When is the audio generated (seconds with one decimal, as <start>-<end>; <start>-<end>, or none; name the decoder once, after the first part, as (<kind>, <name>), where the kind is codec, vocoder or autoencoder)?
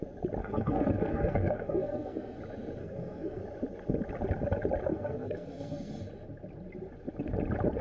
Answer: 0.4-2.4 (codec, SNAC); 2.8-3.4; 4.9-5.9